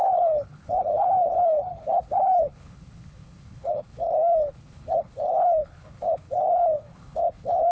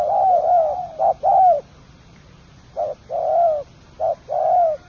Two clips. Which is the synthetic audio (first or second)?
first